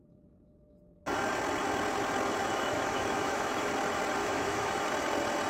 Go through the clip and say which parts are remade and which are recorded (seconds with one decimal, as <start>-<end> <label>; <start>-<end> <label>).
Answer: 0.0-2.4 recorded; 2.4-3.7 remade; 3.7-4.2 recorded; 4.2-4.8 remade; 4.8-5.5 recorded